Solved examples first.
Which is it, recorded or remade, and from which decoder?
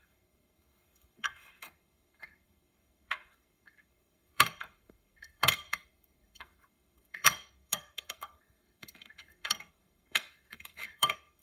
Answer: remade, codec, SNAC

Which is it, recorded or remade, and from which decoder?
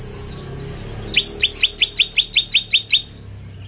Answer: recorded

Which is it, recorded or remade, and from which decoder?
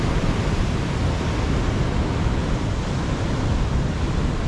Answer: recorded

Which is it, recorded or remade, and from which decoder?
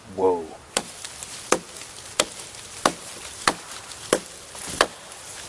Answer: recorded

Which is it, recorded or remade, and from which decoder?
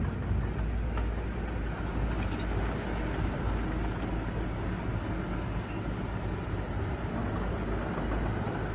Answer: recorded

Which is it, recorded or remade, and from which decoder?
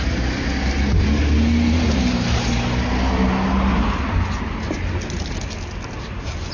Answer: recorded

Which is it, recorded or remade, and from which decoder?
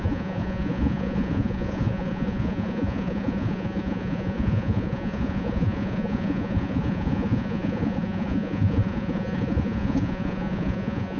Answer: remade, vocoder, Vocos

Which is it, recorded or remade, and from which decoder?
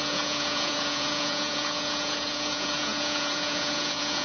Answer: remade, vocoder, Vocos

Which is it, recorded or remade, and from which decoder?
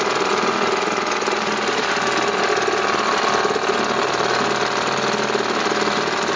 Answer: recorded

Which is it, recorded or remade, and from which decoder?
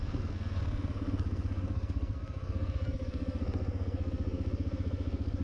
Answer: remade, codec, SNAC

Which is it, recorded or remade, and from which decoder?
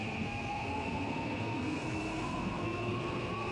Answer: remade, codec, SNAC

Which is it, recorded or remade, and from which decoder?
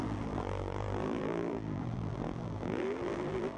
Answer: remade, vocoder, BigVGAN v2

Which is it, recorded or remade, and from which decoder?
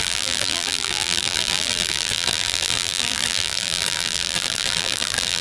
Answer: remade, vocoder, BigVGAN v2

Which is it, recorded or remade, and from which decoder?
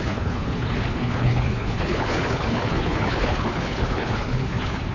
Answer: remade, codec, HILCodec